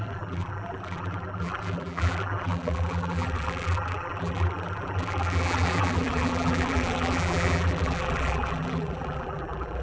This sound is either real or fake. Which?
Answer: fake